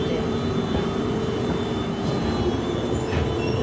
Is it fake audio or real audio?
fake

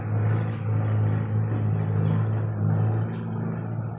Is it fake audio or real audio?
real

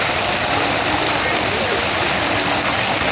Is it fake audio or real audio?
real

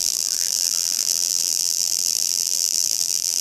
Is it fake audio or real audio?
fake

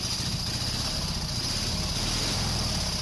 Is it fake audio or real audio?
real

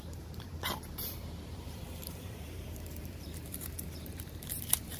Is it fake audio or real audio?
fake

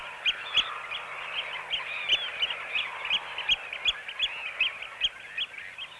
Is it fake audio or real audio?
real